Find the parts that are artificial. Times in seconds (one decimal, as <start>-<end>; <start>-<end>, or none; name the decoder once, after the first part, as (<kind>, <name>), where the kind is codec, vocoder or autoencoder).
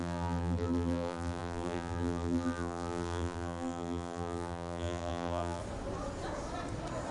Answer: 0.0-5.6 (vocoder, BigVGAN v2)